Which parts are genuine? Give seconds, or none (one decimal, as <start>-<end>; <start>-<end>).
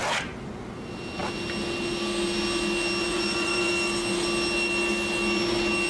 0.0-3.1; 3.7-5.9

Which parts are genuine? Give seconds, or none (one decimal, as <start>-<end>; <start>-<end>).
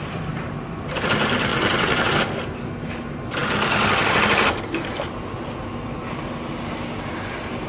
0.0-1.5; 2.1-7.7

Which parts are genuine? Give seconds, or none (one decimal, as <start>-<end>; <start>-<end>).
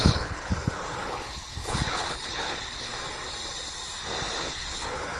2.9-4.4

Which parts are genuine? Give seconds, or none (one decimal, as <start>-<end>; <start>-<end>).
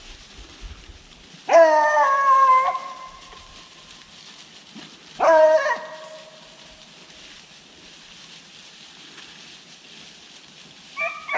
0.0-11.4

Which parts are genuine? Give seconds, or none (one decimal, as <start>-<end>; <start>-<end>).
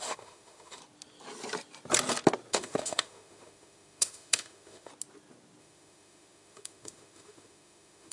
0.8-2.5; 4.9-5.6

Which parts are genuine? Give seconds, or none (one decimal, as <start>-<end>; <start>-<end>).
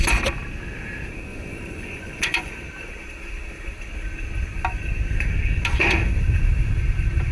0.0-1.3; 2.5-7.3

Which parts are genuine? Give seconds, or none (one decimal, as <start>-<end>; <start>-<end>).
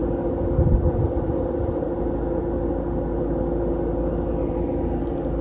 0.0-5.4